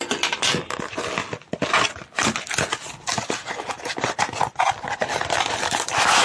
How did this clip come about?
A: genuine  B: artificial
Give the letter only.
A